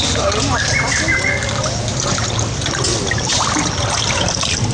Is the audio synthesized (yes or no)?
no